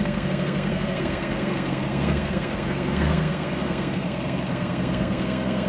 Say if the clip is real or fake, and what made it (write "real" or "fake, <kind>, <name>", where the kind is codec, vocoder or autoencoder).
fake, codec, SNAC